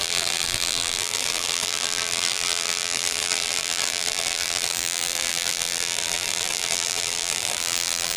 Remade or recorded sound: remade